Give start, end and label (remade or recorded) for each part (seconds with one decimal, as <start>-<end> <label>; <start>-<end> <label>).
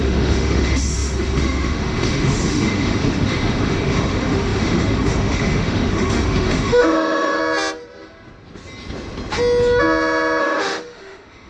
0.0-7.4 remade; 7.4-10.4 recorded; 10.4-11.5 remade